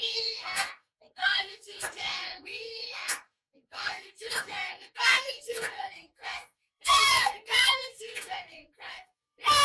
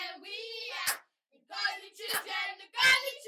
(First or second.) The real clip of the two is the second